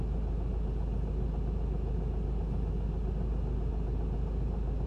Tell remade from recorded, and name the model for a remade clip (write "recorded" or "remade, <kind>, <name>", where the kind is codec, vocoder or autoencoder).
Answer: recorded